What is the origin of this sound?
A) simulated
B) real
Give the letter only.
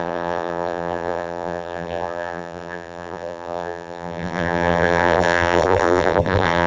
A